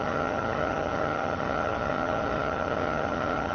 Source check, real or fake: fake